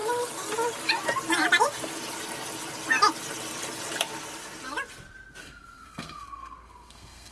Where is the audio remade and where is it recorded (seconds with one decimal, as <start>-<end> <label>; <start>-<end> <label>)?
0.0-5.4 recorded; 5.4-7.3 remade